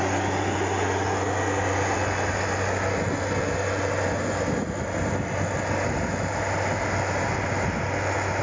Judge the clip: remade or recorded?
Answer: recorded